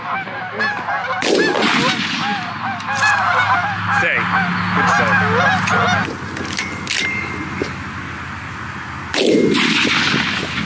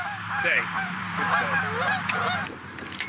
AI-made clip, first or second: second